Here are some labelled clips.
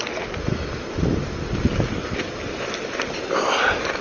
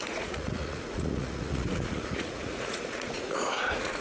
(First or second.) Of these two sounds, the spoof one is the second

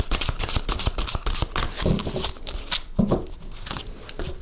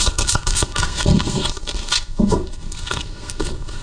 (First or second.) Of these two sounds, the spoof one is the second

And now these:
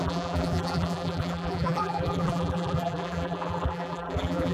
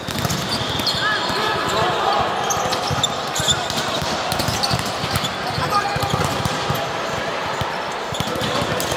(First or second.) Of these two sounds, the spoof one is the first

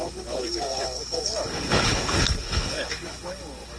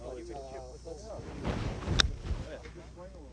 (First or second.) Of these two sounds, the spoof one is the first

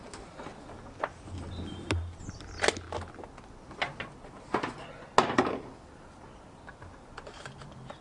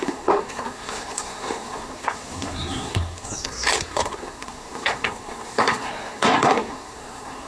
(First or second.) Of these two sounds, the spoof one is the second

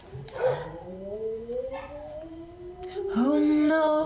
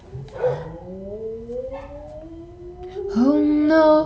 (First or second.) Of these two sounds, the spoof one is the first